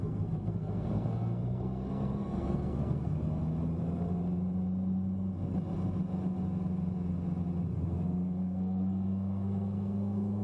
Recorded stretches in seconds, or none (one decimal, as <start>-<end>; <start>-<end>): 3.4-7.7